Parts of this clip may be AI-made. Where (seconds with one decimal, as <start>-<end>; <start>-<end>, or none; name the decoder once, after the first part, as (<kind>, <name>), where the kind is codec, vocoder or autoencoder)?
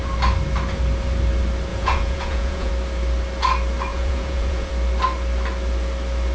1.7-2.7 (vocoder, Vocos); 3.9-4.7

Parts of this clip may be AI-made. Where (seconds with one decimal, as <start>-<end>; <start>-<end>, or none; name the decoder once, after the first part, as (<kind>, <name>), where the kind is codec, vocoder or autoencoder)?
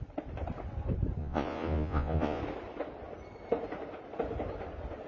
1.2-2.4 (vocoder, Vocos)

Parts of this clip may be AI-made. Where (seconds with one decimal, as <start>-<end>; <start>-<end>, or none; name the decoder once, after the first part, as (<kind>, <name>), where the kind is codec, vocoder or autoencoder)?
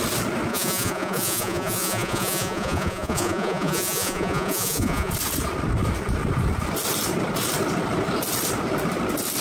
0.5-5.1 (vocoder, Vocos)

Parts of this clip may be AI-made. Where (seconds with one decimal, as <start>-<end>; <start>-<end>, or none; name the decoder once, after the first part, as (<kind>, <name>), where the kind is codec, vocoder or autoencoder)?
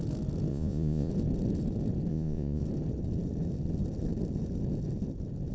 0.5-1.1 (vocoder, Vocos); 2.1-2.6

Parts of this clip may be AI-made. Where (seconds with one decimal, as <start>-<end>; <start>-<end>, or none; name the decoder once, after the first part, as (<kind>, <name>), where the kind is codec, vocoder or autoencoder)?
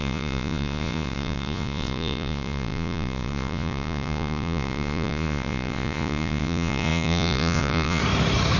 0.0-8.0 (vocoder, Vocos)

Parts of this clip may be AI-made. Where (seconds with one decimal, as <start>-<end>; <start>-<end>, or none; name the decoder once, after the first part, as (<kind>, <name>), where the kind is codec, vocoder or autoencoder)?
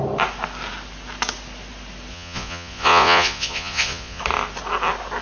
2.1-4.2 (vocoder, Vocos)